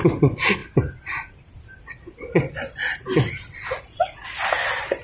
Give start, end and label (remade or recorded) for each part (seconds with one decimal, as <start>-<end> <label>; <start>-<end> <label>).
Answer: 0.0-5.0 recorded